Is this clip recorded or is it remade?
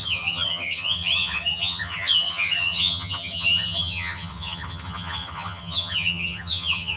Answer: remade